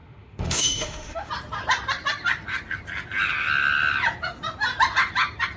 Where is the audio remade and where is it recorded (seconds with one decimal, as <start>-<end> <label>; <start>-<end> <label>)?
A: 0.0-1.3 remade; 1.3-5.6 recorded